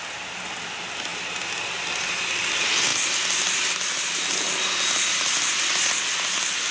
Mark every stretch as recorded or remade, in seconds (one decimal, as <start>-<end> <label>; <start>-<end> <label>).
0.0-6.7 recorded